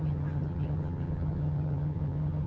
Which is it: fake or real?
fake